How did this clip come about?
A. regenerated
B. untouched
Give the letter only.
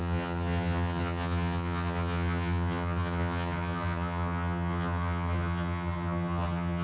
A